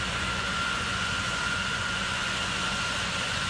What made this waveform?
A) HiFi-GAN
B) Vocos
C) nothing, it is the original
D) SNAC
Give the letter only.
B